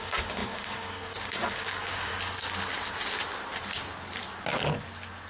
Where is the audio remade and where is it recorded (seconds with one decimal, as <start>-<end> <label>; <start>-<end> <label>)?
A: 0.0-2.1 remade; 2.1-5.3 recorded